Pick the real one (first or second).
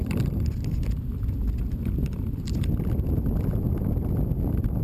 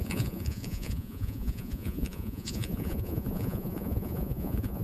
first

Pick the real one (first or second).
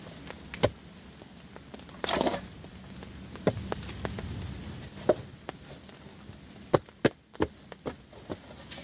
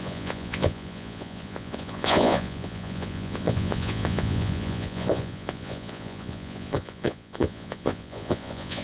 first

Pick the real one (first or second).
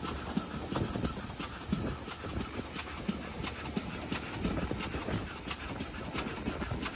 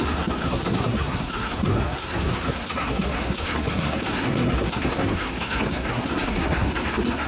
first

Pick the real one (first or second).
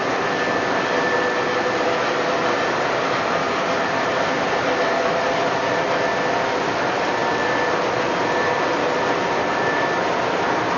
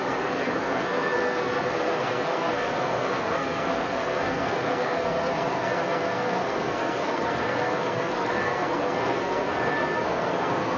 first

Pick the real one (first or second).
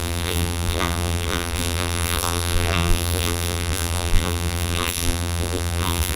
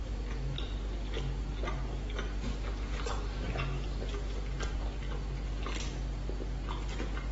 second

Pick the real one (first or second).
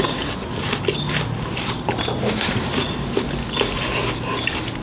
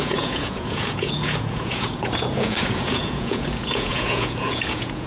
first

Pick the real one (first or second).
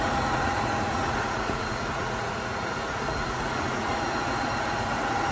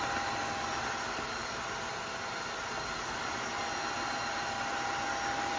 second